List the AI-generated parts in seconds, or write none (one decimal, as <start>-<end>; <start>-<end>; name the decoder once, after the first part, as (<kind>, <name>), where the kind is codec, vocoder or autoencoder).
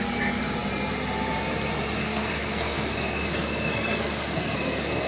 2.0-5.1 (codec, SNAC)